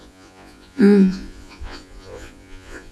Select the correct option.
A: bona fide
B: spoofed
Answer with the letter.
B